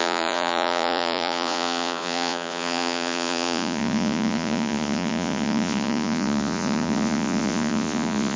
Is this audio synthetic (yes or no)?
yes